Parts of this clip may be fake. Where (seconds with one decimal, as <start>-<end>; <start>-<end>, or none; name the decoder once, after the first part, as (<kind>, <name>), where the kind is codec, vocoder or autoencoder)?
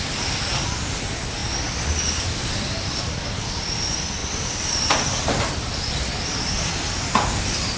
none